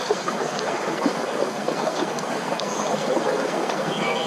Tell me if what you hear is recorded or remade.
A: remade